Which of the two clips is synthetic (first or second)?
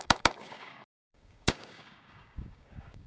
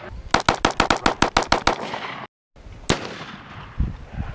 first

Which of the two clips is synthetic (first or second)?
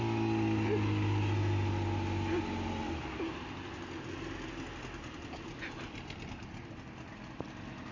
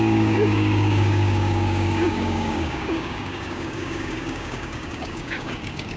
second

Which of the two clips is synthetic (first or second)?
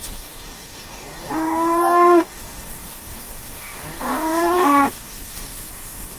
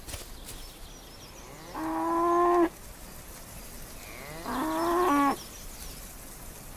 first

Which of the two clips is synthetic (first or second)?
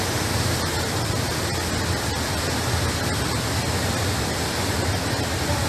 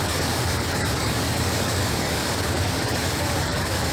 second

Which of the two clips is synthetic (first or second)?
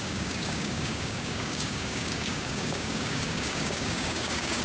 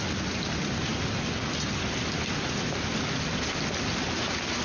first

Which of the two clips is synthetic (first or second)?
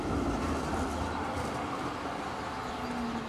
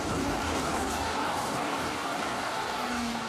second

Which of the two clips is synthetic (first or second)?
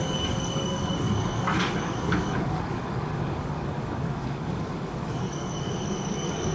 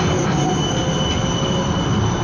first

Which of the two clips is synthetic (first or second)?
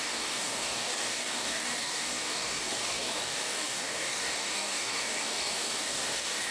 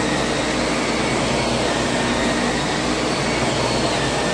first